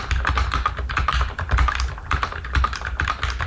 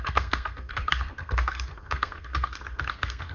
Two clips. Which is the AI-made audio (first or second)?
second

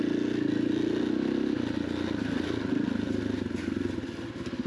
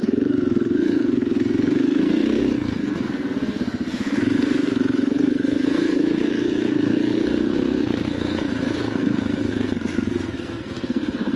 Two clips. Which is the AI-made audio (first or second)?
second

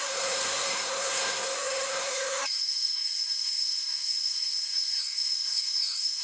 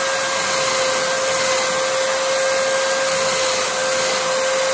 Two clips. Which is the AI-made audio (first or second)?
first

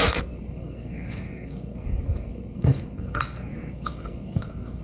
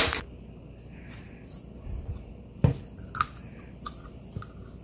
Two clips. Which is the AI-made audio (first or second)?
first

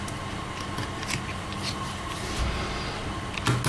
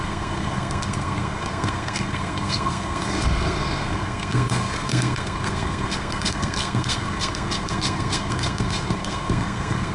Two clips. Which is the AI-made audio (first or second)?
second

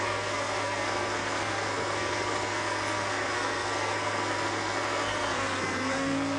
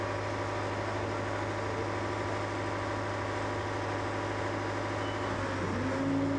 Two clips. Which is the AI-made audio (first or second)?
first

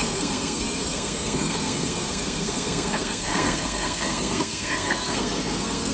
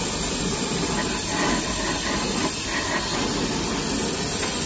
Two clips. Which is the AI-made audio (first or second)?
first